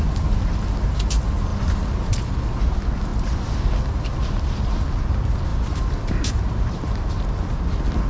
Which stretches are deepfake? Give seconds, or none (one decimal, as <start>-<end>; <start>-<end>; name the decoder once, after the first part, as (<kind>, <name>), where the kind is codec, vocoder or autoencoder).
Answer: 5.5-7.0 (vocoder, BigVGAN v2)